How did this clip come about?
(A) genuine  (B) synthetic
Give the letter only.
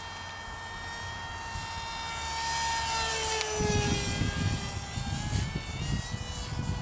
A